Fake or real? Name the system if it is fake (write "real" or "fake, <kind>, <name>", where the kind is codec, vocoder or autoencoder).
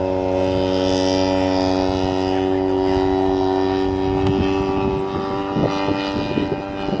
real